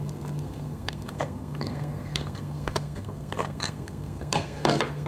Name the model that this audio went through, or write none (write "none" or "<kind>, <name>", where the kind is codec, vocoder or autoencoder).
codec, SNAC